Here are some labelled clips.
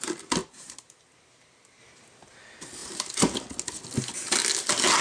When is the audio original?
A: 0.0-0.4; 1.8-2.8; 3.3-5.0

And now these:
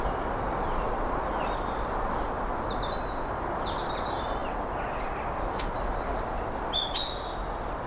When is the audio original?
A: 0.0-7.9

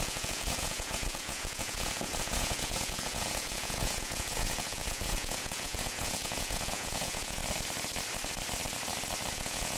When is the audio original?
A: 7.4-9.3

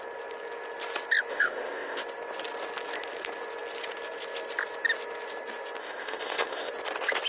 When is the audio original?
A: 0.0-1.3; 2.0-5.8; 6.7-7.3

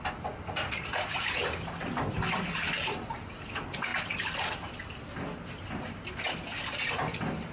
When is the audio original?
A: 0.0-7.5